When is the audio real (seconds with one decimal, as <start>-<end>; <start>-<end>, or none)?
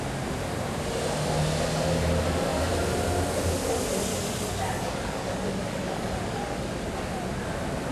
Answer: 0.0-4.1; 6.7-7.9